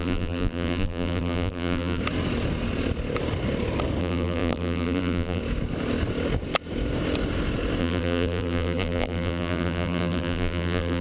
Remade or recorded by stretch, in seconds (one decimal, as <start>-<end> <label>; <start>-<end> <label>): 0.0-2.0 remade; 2.0-4.0 recorded; 4.0-5.4 remade; 5.4-7.8 recorded; 7.8-11.0 remade